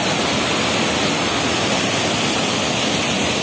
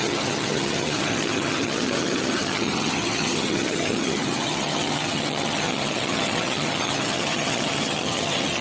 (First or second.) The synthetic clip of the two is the second